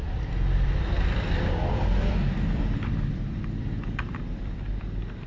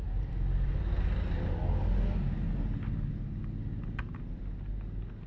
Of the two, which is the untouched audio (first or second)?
second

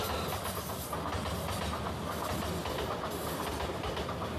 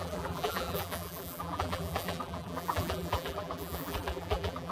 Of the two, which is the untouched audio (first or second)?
first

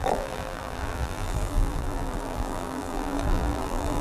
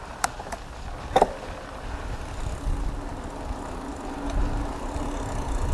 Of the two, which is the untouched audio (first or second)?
second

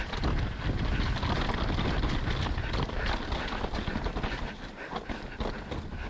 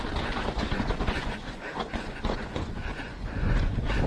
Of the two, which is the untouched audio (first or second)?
first